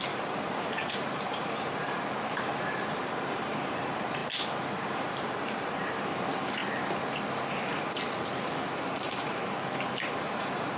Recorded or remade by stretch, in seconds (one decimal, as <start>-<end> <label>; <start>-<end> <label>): 0.0-4.2 remade; 4.2-4.8 recorded; 4.8-6.6 remade; 6.6-7.3 recorded; 7.3-10.8 remade

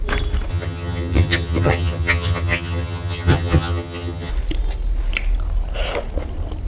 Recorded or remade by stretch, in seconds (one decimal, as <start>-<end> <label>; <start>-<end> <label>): 0.0-0.5 recorded; 0.5-4.3 remade; 4.3-6.7 recorded

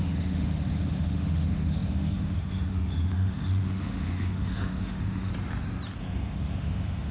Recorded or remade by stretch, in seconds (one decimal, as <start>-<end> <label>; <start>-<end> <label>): 0.0-5.3 remade; 5.3-6.0 recorded; 6.0-7.1 remade

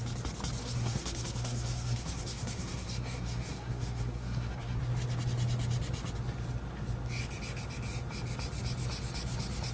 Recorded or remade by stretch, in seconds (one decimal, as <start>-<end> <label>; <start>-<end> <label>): 0.0-0.6 recorded; 0.6-4.8 remade; 4.8-9.7 recorded

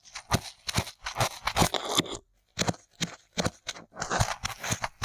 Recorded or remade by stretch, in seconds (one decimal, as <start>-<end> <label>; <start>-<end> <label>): 0.0-5.0 recorded

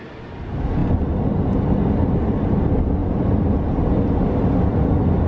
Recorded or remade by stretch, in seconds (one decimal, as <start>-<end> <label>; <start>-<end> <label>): 0.0-3.0 recorded; 3.0-3.7 remade; 3.7-5.3 recorded